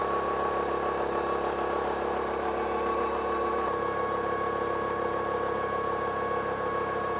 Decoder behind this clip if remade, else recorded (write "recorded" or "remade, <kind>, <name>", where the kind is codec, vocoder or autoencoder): recorded